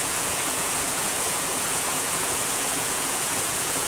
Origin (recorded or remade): remade